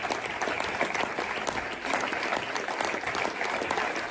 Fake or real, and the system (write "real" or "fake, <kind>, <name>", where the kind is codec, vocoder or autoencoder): real